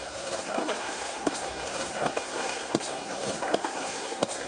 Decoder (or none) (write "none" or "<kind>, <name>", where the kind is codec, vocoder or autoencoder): codec, SNAC